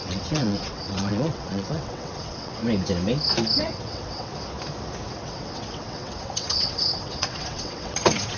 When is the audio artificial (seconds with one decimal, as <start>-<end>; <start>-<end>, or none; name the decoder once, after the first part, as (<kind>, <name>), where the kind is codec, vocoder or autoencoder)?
0.0-2.6 (vocoder, WaveNeXt); 3.6-4.3; 5.1-8.4